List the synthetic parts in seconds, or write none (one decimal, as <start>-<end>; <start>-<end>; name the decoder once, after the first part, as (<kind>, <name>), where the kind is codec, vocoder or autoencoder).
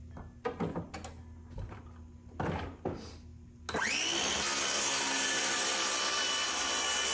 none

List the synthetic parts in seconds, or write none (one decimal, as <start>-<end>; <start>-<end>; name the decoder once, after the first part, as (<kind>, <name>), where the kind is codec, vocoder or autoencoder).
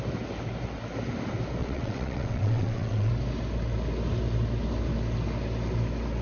1.6-3.1 (vocoder, WaveNeXt)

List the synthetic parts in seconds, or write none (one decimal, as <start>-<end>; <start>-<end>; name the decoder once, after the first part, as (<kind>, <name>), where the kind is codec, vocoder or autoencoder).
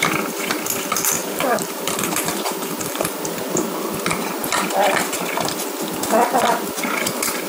1.2-3.2 (vocoder, BigVGAN v2)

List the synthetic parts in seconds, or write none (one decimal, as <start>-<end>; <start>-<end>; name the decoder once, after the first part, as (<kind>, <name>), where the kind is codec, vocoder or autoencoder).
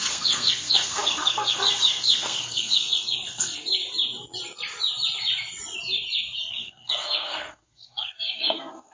0.0-3.8 (codec, SNAC); 6.5-8.9